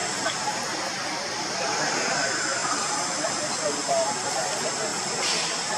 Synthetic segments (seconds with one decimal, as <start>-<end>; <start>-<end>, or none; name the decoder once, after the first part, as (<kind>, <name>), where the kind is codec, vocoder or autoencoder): none